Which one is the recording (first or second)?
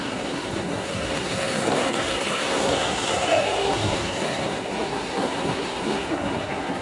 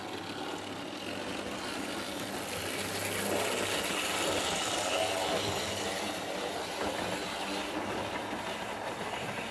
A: second